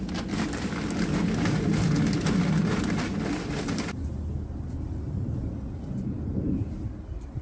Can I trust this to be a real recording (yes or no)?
yes